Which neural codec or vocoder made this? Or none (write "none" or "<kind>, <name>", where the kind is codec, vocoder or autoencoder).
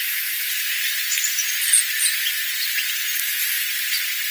none